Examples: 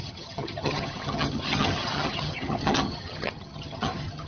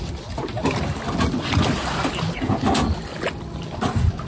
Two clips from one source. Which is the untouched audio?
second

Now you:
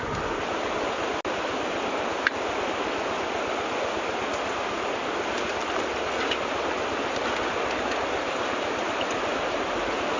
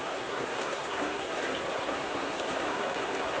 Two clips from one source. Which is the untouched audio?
first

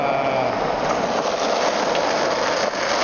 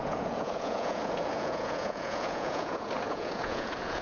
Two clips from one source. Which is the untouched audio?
first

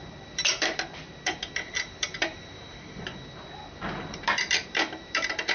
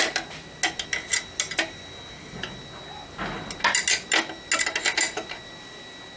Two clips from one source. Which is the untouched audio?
second